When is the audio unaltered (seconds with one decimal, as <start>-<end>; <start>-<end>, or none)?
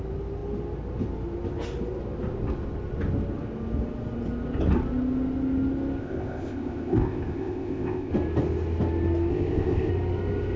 0.0-6.0; 8.1-9.3; 9.9-10.6